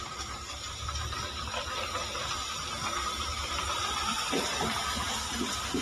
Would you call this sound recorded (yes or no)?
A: no